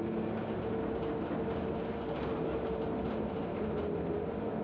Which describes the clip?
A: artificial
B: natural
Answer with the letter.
B